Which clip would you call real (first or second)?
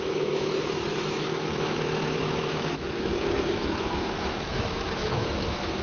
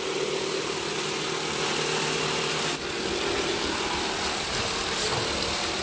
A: second